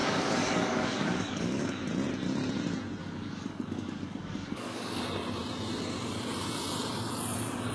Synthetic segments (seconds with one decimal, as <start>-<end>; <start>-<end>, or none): 0.0-1.8; 3.0-5.0